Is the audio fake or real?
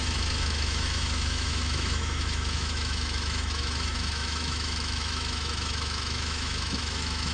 fake